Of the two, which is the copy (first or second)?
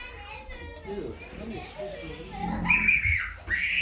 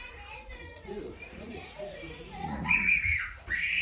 second